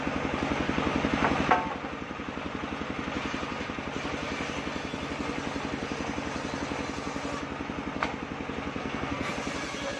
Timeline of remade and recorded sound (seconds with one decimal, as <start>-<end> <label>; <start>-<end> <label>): 0.0-8.8 recorded; 8.8-9.3 remade; 9.3-10.0 recorded